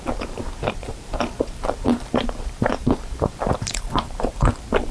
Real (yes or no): no